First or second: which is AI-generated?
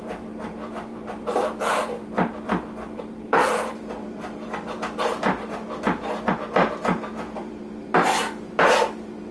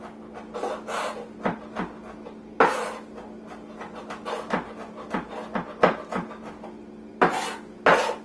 first